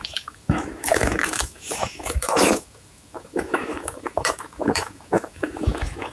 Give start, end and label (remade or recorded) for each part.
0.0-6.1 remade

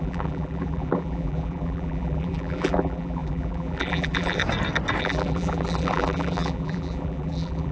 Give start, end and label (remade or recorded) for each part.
0.0-4.4 remade; 4.4-5.0 recorded; 5.0-7.7 remade